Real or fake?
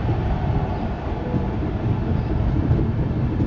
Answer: real